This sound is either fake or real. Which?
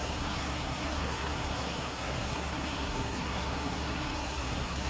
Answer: fake